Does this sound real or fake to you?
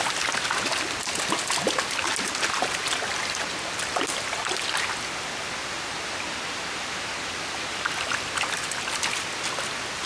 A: real